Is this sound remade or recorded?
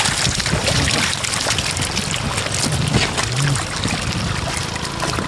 recorded